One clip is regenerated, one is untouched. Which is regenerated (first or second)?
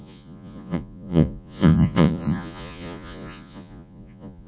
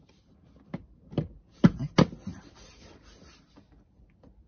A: first